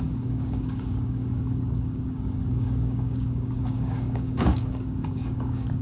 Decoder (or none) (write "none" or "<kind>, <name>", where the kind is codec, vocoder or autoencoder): codec, DAC